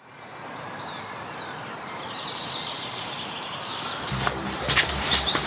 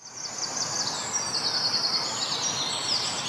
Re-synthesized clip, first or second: first